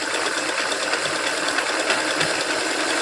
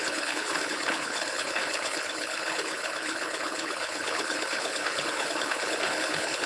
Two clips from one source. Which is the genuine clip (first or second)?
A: first